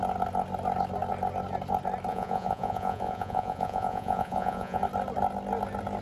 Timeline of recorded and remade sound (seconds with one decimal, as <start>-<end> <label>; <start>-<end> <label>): 0.0-2.1 recorded; 2.1-4.8 remade; 4.8-6.0 recorded